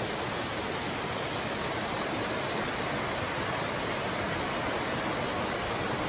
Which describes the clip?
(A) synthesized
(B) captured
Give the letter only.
B